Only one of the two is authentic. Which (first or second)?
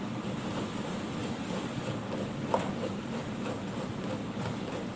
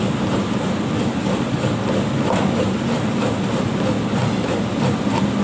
second